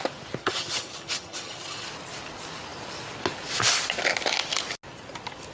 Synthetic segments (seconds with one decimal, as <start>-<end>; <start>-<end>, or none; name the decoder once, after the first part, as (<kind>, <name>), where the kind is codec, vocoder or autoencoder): 0.4-1.9 (vocoder, HiFi-GAN)